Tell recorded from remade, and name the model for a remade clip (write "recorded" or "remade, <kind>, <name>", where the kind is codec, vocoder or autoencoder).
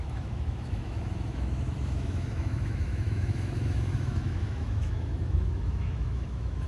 remade, autoencoder, DAC-VAE